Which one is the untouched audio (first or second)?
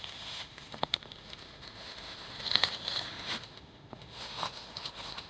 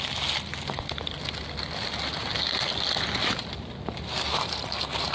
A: second